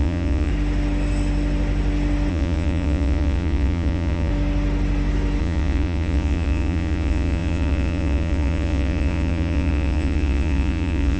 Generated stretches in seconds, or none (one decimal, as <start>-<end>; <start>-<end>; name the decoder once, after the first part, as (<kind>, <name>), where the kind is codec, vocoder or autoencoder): 0.0-0.5 (vocoder, Vocos); 2.3-4.3; 5.4-11.2